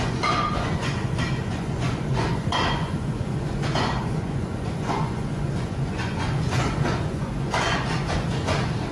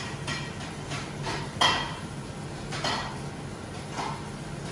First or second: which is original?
second